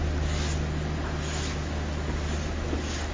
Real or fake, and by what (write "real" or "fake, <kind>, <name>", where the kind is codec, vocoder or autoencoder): real